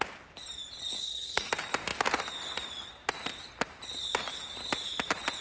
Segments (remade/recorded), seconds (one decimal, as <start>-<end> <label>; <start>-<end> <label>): 0.0-1.0 recorded; 1.0-1.5 remade; 1.5-5.4 recorded